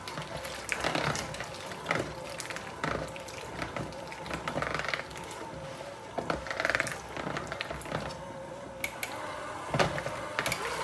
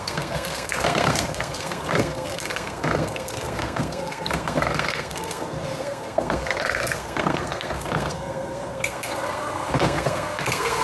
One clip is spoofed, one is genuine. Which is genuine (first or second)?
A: first